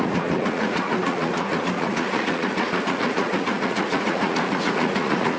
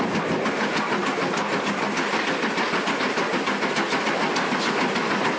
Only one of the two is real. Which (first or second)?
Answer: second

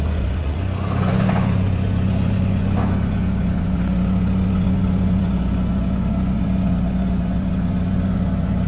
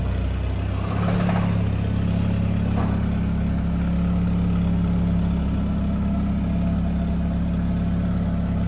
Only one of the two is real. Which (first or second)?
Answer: second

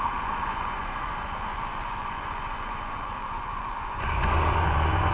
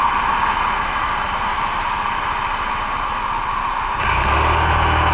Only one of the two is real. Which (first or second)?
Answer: second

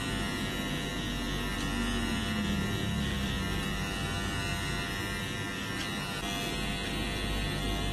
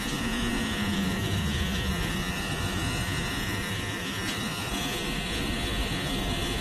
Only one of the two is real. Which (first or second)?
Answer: first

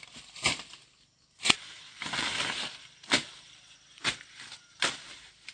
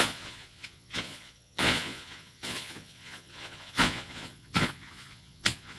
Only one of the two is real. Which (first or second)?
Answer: first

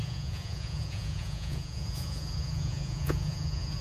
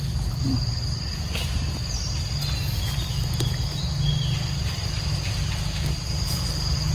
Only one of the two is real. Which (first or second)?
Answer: second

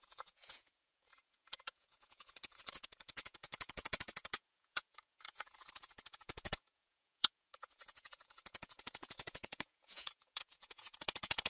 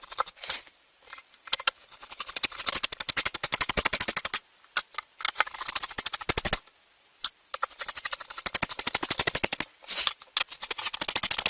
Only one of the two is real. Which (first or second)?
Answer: second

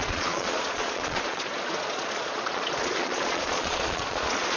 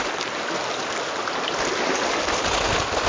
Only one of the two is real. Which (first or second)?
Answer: second